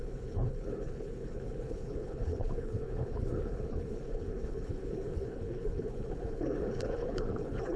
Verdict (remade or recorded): remade